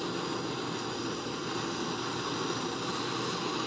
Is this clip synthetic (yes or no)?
no